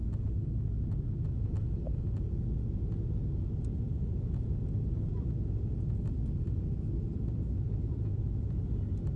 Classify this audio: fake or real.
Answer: real